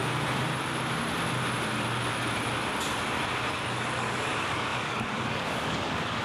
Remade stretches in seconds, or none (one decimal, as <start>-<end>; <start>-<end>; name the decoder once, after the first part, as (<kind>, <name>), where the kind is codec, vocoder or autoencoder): 3.7-6.2 (codec, DAC)